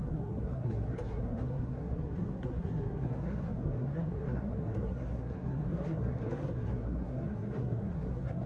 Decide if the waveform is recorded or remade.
remade